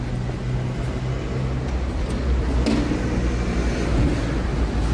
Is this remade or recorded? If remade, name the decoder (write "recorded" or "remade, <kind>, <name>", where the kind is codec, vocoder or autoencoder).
recorded